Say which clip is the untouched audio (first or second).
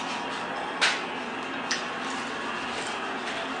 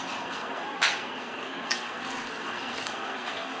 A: first